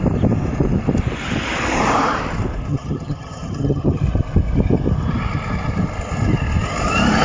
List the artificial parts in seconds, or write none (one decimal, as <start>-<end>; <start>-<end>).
2.7-4.0